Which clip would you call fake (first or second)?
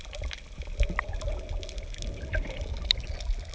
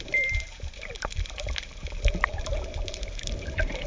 second